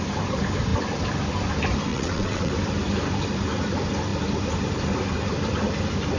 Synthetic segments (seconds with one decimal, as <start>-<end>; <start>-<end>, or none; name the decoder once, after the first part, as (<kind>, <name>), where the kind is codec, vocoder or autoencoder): 1.9-2.5 (vocoder, WaveNeXt)